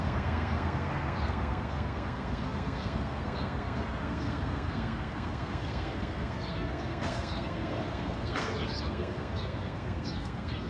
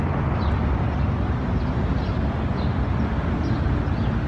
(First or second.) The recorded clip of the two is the second